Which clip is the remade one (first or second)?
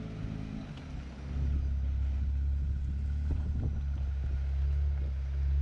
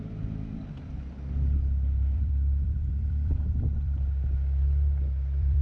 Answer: second